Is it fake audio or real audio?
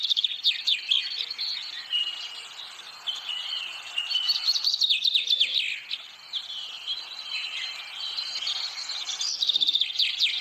real